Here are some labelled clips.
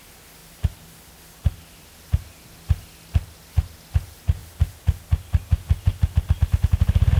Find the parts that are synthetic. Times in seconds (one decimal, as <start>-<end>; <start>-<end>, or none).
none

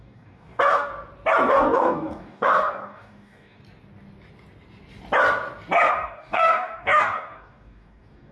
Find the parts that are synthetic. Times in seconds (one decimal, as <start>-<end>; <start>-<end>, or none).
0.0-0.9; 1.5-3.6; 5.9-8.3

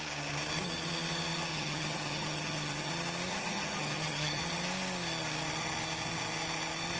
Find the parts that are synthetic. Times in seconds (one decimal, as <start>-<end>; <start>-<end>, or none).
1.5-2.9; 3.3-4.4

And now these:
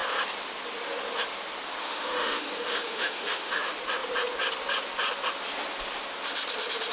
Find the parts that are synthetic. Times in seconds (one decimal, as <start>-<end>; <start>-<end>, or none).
1.8-3.6

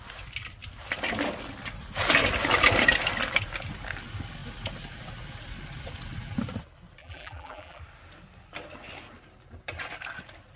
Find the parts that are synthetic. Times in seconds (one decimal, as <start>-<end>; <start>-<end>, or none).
7.0-7.8

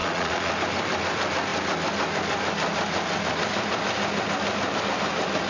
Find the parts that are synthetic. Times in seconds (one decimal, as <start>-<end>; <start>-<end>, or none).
0.0-0.5